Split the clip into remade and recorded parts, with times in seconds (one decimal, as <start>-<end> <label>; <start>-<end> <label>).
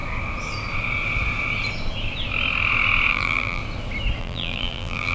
0.0-3.1 recorded; 3.1-3.6 remade; 3.6-4.2 recorded; 4.2-5.1 remade